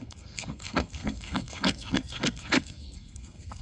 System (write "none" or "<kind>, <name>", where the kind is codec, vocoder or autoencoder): codec, SNAC